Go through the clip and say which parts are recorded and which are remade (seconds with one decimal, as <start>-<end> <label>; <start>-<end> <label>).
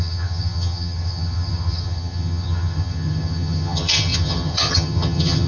0.0-5.5 remade